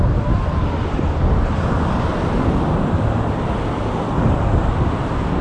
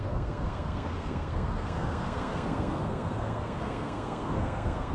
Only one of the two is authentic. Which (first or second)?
first